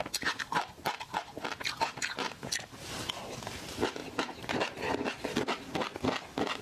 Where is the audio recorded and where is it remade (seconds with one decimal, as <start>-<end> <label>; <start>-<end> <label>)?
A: 0.0-4.0 recorded; 4.0-4.6 remade; 4.6-6.6 recorded